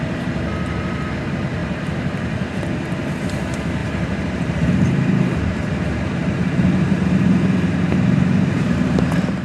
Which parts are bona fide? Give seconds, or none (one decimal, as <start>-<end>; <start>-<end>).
0.0-1.6; 2.6-3.8; 9.0-9.4